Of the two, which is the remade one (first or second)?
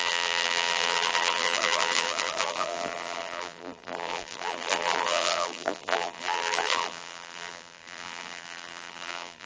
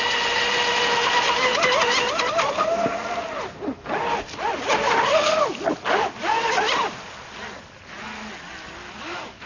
first